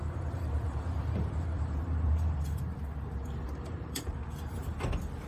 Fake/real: fake